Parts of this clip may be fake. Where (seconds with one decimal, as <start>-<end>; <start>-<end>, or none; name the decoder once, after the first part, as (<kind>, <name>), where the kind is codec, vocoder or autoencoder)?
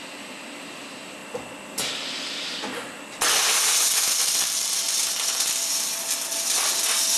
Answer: none